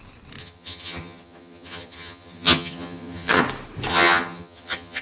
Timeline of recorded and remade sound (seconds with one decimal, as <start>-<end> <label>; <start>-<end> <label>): 0.0-0.4 recorded; 0.4-3.4 remade; 3.4-3.9 recorded; 3.9-5.0 remade